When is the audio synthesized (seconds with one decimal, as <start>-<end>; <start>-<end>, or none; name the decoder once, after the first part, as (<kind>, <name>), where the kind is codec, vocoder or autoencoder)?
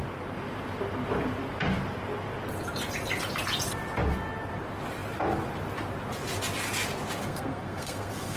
7.2-8.4 (codec, SNAC)